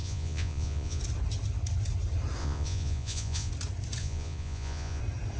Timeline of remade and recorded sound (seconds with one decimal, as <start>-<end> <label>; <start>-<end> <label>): 0.0-1.0 remade; 1.0-2.4 recorded; 2.4-3.5 remade; 3.5-4.0 recorded; 4.0-5.0 remade; 5.0-5.4 recorded